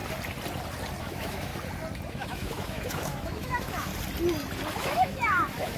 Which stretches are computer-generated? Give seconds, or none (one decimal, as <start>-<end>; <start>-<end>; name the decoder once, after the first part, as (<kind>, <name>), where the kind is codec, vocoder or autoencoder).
1.0-1.5 (autoencoder, DAC-VAE); 2.1-3.9; 4.7-5.8